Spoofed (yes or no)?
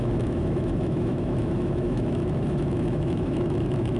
yes